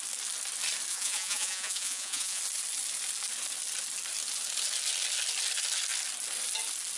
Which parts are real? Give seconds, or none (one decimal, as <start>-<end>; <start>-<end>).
0.0-0.9; 2.4-7.0